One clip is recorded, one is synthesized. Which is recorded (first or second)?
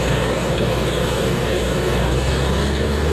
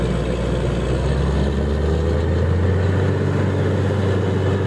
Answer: second